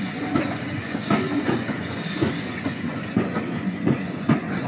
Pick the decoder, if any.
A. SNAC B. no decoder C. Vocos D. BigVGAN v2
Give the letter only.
C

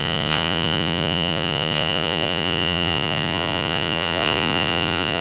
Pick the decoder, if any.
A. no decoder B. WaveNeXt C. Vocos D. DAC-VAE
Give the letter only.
C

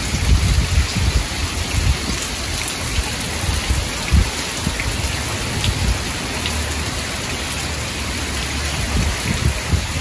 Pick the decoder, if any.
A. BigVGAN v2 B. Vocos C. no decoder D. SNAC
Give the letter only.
C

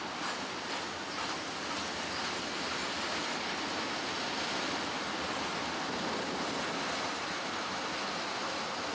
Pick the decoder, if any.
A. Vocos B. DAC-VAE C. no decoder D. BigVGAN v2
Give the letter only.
C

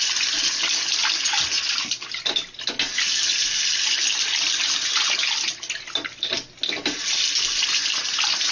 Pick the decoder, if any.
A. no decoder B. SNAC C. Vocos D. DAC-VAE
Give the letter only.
A